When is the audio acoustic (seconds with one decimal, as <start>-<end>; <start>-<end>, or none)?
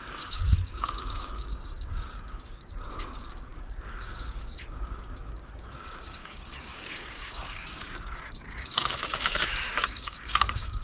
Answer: none